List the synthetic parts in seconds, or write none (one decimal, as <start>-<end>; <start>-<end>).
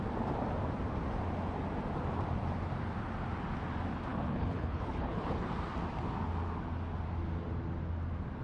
4.1-5.5